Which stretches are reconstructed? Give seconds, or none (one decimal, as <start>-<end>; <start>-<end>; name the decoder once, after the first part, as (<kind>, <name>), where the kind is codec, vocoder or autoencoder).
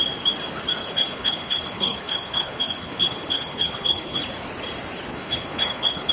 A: 0.8-4.2 (codec, HILCodec); 5.1-6.1